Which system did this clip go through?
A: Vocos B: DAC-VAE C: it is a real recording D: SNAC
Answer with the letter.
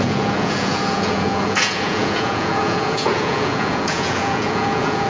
A